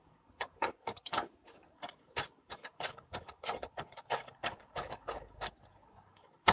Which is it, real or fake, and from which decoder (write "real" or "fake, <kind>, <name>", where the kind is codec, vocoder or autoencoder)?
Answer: fake, codec, DAC